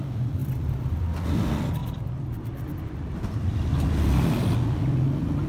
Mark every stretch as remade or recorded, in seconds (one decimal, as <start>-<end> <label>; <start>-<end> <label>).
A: 0.0-0.4 recorded; 0.4-1.0 remade; 1.0-1.8 recorded; 1.8-3.7 remade; 3.7-5.5 recorded